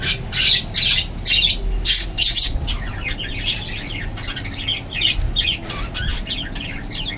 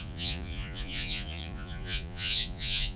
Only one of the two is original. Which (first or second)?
first